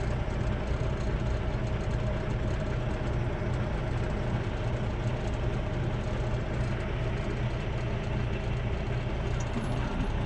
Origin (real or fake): real